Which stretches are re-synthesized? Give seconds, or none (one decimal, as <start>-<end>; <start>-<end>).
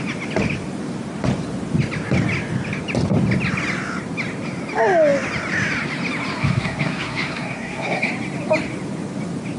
6.4-8.1